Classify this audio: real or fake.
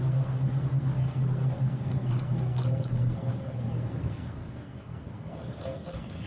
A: fake